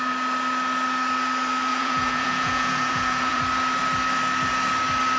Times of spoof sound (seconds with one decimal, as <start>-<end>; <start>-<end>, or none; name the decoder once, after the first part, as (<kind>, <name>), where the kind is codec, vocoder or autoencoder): 1.7-3.4 (vocoder, Vocos)